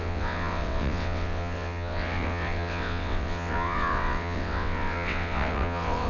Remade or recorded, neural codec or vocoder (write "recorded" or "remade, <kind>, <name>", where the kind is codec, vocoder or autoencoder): remade, vocoder, WaveNeXt